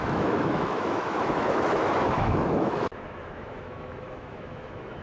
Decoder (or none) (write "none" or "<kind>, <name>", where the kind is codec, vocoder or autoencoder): autoencoder, DAC-VAE